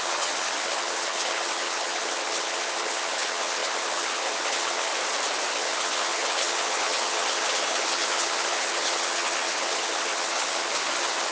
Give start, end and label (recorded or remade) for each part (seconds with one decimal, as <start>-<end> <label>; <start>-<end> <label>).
0.0-4.9 remade; 4.9-5.5 recorded; 5.5-11.3 remade